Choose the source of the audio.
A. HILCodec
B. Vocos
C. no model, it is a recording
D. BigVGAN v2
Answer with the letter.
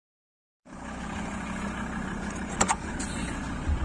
B